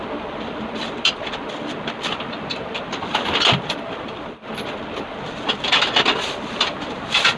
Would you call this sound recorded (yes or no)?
yes